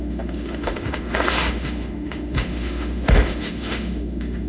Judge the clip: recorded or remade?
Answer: remade